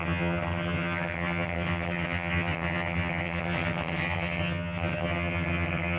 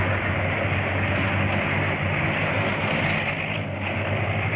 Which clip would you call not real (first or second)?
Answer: first